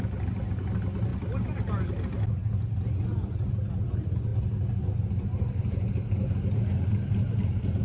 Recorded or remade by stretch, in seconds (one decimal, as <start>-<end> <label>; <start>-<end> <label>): 0.0-7.8 recorded